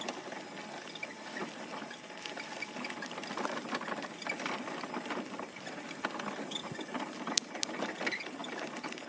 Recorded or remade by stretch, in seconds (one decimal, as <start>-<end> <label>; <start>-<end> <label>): 0.0-9.1 recorded